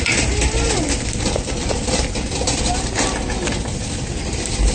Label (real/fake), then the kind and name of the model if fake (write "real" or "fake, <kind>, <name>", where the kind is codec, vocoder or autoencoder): real